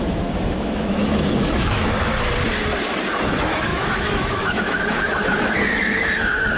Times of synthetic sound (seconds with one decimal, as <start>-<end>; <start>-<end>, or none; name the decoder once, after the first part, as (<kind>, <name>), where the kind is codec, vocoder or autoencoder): 0.0-2.1 (autoencoder, DAC-VAE); 3.1-6.6